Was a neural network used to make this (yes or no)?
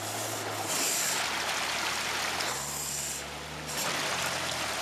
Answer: no